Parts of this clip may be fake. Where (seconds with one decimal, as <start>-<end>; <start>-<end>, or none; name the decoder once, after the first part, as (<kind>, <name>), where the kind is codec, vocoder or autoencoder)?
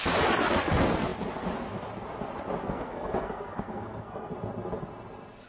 2.6-4.3 (codec, SNAC)